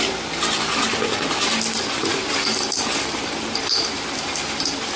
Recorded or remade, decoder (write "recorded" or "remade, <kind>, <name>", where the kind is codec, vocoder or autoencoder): remade, vocoder, BigVGAN v2